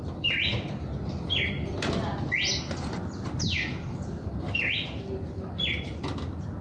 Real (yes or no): yes